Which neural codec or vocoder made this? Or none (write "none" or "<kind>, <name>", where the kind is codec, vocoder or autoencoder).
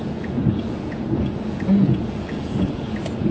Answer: vocoder, Vocos